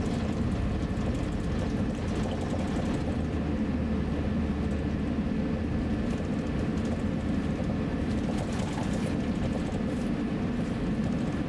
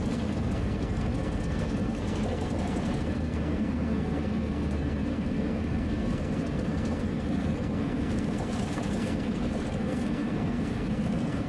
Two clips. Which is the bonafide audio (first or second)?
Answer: first